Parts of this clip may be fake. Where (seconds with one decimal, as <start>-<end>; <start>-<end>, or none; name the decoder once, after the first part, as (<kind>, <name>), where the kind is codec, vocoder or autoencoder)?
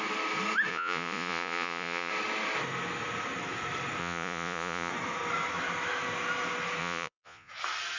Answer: 0.7-2.1 (vocoder, Vocos); 4.0-4.9; 6.8-7.5